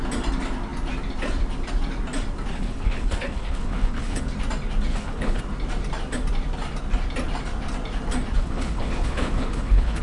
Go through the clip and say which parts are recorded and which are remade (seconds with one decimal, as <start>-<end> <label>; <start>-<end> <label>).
0.0-2.5 recorded; 2.5-4.2 remade; 4.2-4.9 recorded; 4.9-5.4 remade; 5.4-8.4 recorded; 8.4-10.0 remade